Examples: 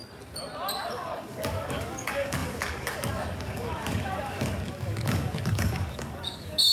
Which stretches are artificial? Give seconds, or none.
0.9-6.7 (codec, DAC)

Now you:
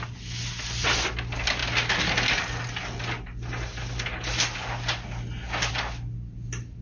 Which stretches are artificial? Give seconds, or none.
none

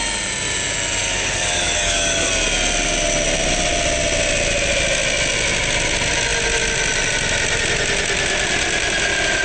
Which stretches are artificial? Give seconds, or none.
1.0-2.3 (codec, DAC)

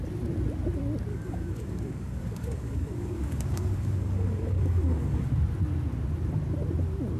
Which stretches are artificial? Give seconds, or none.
1.1-5.3 (codec, DAC)

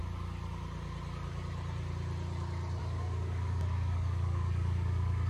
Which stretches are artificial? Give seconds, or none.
2.8-5.3 (codec, DAC)

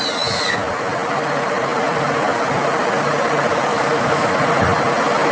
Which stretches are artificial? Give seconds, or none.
3.7-4.3 (codec, DAC)

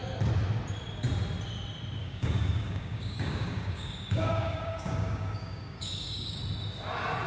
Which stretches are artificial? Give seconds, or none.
2.0-6.4 (codec, DAC)

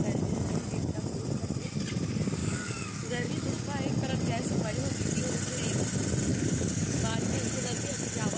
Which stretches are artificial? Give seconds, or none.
2.4-3.3 (codec, DAC); 6.3-7.0